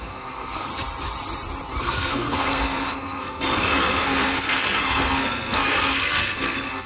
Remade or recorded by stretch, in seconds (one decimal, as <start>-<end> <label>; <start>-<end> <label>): 0.0-0.7 remade; 0.7-1.8 recorded; 1.8-6.9 remade